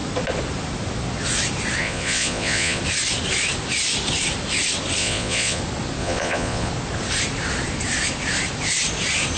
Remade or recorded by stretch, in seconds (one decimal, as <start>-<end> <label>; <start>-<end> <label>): 0.0-1.8 recorded; 1.8-2.8 remade; 2.8-5.0 recorded; 5.0-5.6 remade; 5.6-6.0 recorded; 6.0-6.7 remade; 6.7-9.4 recorded